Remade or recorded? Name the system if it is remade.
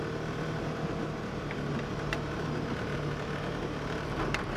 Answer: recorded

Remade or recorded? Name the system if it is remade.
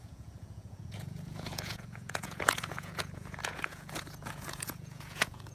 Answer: remade, vocoder, Vocos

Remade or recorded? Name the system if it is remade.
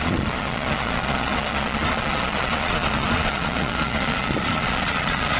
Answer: remade, vocoder, Vocos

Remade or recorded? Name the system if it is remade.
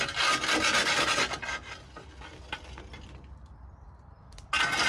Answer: recorded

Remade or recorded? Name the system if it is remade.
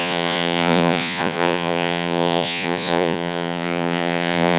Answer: remade, vocoder, Vocos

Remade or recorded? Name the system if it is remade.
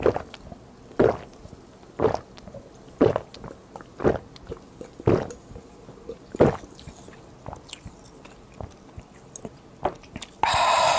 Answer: recorded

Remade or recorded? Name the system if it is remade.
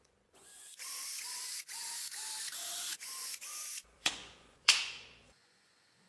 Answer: remade, vocoder, Vocos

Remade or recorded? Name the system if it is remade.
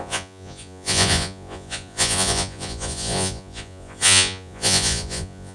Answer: remade, vocoder, Vocos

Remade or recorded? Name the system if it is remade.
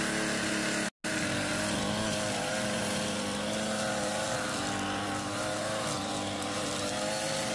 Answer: recorded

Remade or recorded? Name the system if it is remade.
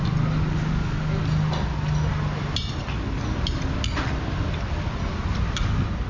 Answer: recorded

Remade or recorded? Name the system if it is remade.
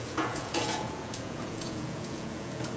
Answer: remade, vocoder, Vocos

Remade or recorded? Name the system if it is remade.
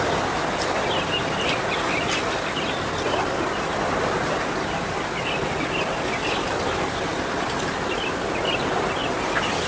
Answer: recorded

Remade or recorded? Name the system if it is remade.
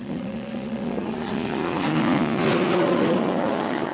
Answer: remade, vocoder, Vocos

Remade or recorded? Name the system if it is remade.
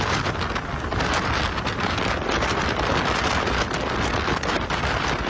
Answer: recorded